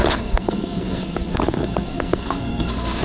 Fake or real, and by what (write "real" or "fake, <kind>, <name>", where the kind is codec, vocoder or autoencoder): fake, codec, SNAC